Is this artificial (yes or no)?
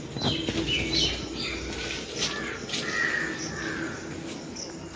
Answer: no